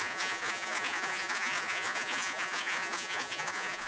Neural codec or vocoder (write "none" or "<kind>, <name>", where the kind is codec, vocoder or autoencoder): vocoder, Vocos